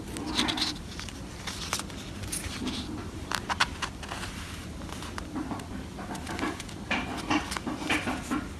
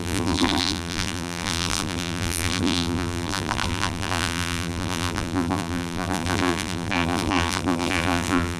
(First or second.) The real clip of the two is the first